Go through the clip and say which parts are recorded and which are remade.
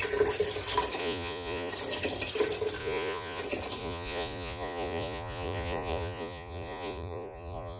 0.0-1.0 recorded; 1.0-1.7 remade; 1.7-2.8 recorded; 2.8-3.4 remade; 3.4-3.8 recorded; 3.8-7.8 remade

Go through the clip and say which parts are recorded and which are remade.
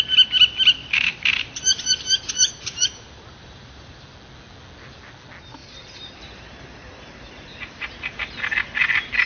0.0-0.8 recorded; 0.8-4.0 remade; 4.0-5.6 recorded; 5.6-8.0 remade; 8.0-9.3 recorded